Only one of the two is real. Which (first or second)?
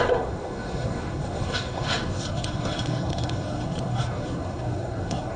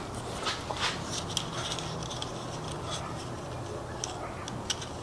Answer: second